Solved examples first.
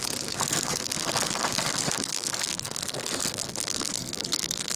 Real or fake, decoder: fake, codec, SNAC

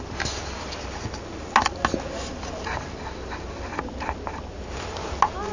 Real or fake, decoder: real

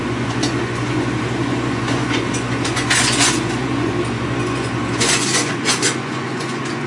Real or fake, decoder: fake, vocoder, Vocos